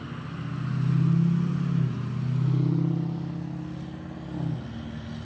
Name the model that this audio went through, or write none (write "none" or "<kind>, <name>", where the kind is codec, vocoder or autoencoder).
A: none